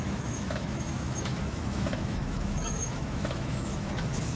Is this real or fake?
fake